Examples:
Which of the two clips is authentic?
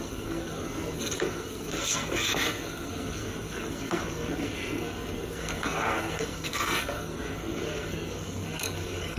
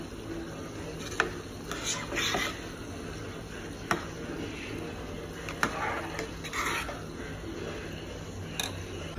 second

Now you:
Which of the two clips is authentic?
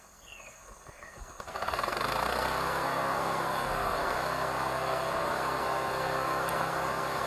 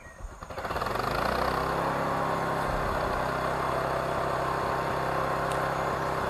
second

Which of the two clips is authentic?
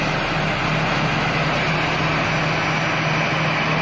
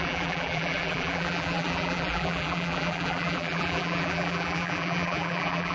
first